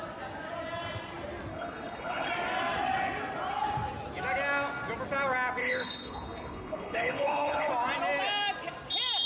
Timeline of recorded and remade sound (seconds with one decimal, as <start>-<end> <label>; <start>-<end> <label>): 0.0-1.5 recorded; 1.5-2.3 remade; 2.3-5.6 recorded; 5.6-7.7 remade; 7.7-9.3 recorded